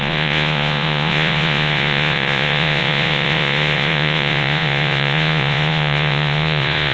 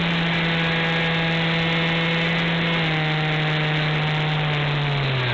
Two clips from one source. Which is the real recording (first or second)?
second